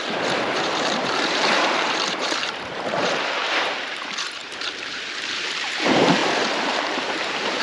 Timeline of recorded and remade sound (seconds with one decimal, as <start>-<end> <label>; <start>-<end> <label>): 0.0-7.6 remade